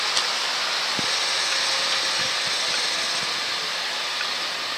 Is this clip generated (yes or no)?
no